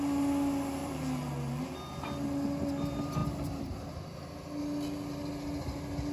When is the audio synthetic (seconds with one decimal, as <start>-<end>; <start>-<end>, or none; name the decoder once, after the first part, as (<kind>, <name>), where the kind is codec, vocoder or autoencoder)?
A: 0.8-1.6 (vocoder, BigVGAN v2)